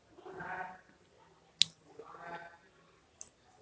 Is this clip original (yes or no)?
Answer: yes